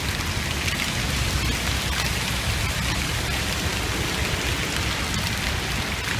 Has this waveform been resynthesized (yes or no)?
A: no